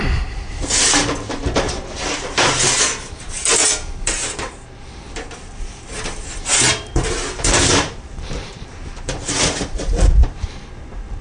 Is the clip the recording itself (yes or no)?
no